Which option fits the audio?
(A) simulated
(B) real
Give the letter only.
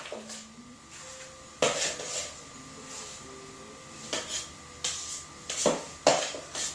B